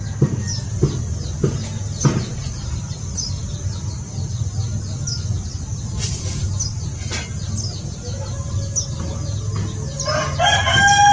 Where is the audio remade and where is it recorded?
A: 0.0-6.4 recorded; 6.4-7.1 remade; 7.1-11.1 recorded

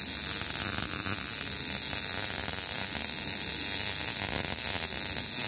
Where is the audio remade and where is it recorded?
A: 0.0-5.5 recorded

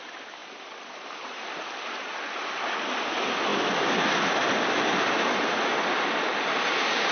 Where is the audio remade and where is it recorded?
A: 0.0-0.4 recorded; 0.4-2.7 remade; 2.7-3.5 recorded; 3.5-6.6 remade; 6.6-7.1 recorded

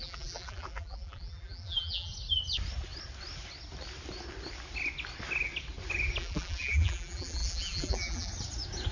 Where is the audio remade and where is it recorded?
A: 0.0-2.1 remade; 2.1-6.2 recorded; 6.2-8.3 remade; 8.3-8.9 recorded

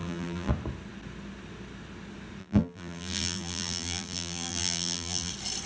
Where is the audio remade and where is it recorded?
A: 0.0-0.5 remade; 0.5-2.4 recorded; 2.4-5.3 remade; 5.3-5.7 recorded

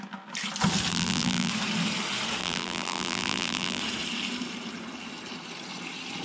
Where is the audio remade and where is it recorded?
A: 0.0-0.9 recorded; 0.9-1.5 remade; 1.5-2.4 recorded; 2.4-3.8 remade; 3.8-6.2 recorded

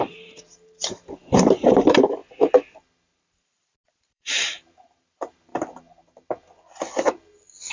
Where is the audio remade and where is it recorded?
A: 0.0-2.2 remade; 2.2-3.0 recorded; 3.0-5.5 remade; 5.5-7.7 recorded